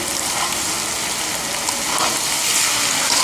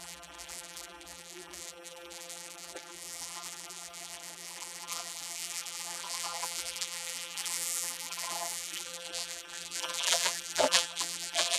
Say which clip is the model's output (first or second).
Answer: second